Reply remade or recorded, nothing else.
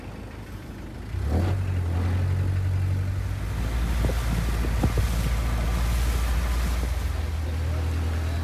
recorded